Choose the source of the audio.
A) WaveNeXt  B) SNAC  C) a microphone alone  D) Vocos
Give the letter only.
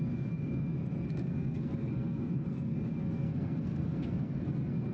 B